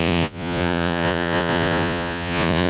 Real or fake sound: fake